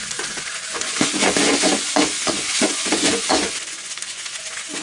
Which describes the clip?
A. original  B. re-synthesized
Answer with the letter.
B